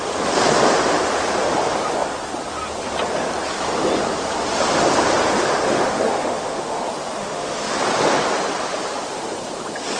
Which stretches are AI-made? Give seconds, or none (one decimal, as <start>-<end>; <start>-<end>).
5.7-6.8; 7.2-7.8